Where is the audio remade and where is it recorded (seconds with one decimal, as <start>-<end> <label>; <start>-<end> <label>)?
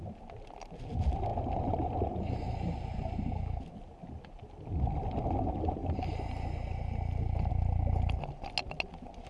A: 0.0-9.3 recorded